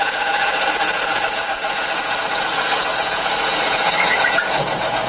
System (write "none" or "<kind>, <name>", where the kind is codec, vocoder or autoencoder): vocoder, Vocos